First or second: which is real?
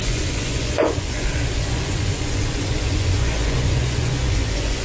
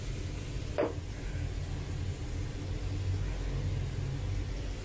second